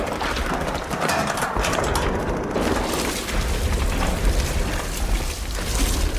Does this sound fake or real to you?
real